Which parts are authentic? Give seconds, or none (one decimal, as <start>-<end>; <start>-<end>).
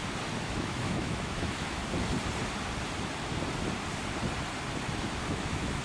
0.0-0.5; 1.8-5.3